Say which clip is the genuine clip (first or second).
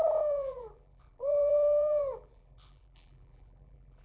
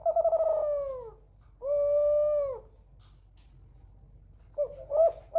second